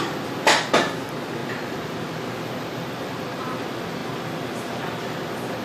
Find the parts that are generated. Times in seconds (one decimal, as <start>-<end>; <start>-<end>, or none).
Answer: 1.4-3.4